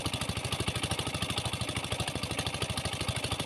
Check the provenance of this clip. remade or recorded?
recorded